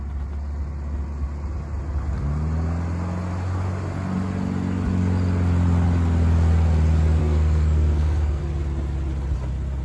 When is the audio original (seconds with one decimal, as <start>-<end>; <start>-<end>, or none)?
0.0-7.2; 8.4-9.8